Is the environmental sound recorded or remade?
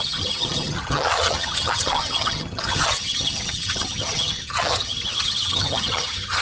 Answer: remade